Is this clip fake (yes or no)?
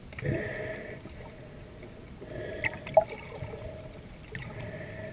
no